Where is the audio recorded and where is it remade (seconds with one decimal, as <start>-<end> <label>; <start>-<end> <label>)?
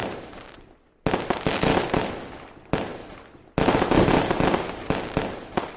0.0-5.8 recorded